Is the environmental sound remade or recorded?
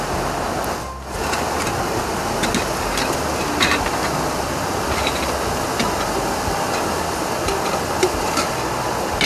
recorded